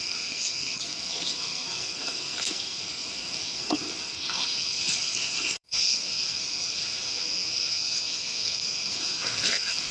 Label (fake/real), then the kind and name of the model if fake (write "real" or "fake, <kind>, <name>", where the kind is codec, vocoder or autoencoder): fake, codec, SNAC